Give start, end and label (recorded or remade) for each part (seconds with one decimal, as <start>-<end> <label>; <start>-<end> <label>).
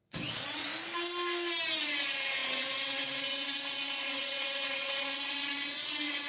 0.0-0.7 remade; 0.7-1.8 recorded; 1.8-6.3 remade